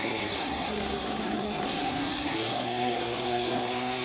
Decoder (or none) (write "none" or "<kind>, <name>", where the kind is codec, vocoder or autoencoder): codec, SNAC